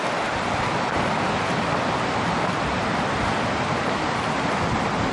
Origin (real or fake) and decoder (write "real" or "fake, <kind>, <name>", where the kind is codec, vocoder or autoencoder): real